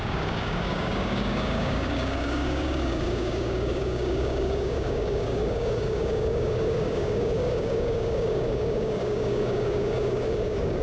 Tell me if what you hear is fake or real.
fake